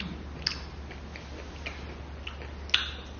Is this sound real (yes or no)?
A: yes